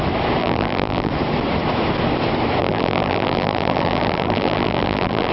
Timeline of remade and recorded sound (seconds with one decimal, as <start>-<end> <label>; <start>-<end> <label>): 0.0-0.4 recorded; 0.4-1.1 remade; 1.1-2.6 recorded; 2.6-5.3 remade

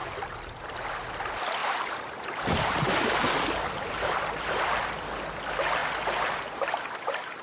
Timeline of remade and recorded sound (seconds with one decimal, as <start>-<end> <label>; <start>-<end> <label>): 0.0-1.6 recorded; 1.6-3.2 remade; 3.2-5.8 recorded; 5.8-7.4 remade

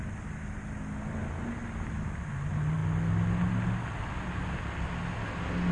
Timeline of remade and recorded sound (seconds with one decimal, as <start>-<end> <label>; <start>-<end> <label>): 0.0-5.7 recorded